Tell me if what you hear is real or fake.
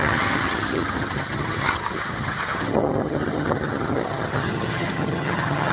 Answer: fake